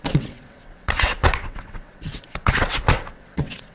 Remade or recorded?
remade